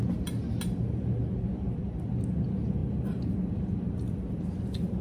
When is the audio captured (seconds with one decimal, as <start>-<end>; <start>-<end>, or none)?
0.0-5.0